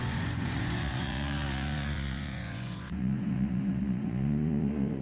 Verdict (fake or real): fake